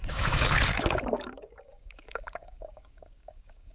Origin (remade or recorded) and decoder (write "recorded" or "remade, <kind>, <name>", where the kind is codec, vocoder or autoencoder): remade, codec, DAC